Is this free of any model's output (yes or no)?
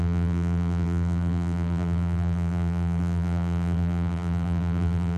no